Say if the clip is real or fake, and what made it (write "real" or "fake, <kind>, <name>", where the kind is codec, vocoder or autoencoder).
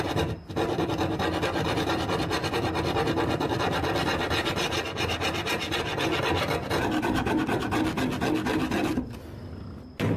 real